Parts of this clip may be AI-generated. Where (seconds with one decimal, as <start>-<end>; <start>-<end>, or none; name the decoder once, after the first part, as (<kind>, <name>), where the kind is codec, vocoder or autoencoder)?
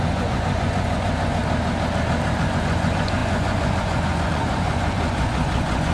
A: 0.0-1.4 (vocoder, Vocos); 2.4-5.9